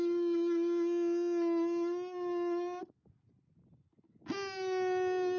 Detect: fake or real real